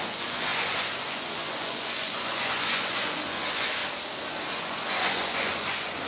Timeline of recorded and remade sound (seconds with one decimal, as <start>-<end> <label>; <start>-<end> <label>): 0.0-3.8 remade; 3.8-4.5 recorded; 4.5-6.1 remade